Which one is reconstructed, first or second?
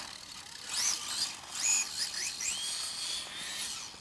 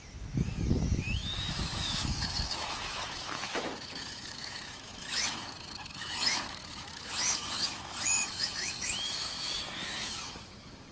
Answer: second